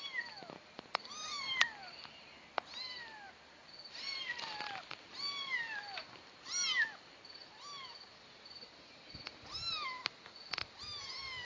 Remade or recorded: recorded